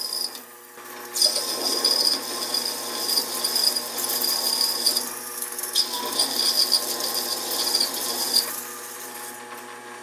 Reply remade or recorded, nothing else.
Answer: recorded